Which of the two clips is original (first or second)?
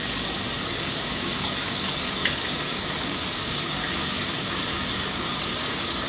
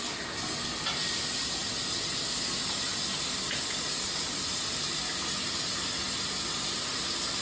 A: second